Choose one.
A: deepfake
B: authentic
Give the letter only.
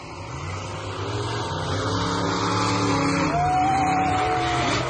B